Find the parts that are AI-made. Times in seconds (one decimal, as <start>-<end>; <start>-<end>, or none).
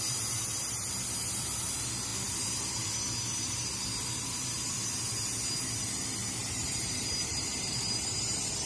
6.4-8.7